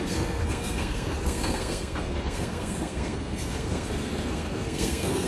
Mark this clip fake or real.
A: fake